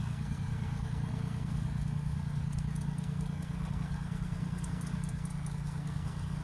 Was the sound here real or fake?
fake